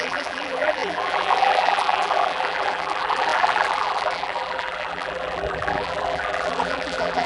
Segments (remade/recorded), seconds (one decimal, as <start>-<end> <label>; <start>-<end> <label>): 0.0-7.3 remade